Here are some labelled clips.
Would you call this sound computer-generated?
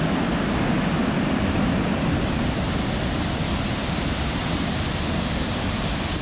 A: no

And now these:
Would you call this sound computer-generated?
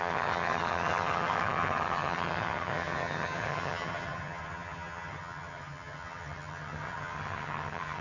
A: yes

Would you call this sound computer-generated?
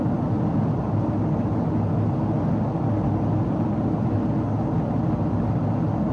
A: no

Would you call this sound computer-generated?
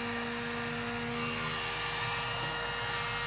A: no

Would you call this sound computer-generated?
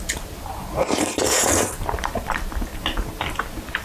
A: no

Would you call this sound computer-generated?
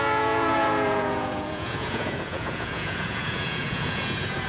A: yes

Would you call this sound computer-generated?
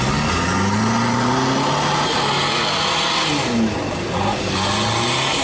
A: no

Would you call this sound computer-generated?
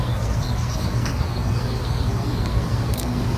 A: yes